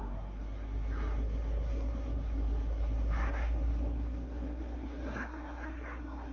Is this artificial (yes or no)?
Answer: yes